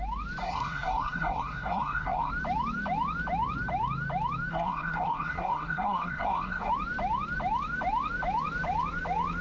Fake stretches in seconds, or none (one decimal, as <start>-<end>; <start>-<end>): 0.4-2.3; 4.5-6.7